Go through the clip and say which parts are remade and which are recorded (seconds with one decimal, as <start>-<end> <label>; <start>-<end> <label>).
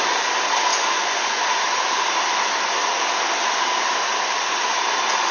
0.0-0.7 recorded; 0.7-1.4 remade; 1.4-5.3 recorded